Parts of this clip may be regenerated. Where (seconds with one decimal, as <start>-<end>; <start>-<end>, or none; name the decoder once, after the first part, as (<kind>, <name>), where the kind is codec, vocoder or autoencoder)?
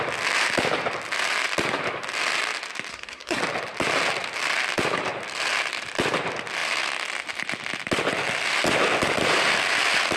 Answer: 2.9-3.4 (codec, SNAC)